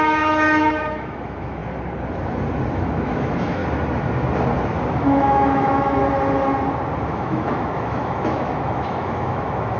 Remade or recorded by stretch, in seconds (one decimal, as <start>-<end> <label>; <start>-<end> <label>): 0.0-1.6 remade; 1.6-2.7 recorded; 2.7-3.6 remade; 3.6-4.9 recorded; 4.9-6.0 remade; 6.0-7.0 recorded; 7.0-9.8 remade